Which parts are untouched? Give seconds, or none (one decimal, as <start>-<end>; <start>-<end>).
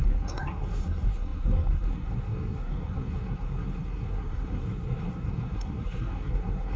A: none